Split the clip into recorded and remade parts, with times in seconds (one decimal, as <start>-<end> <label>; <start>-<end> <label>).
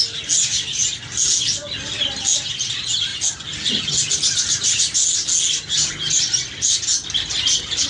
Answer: 0.0-7.9 recorded